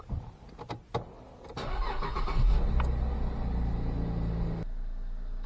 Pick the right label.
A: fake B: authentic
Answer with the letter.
B